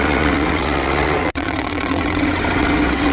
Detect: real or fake fake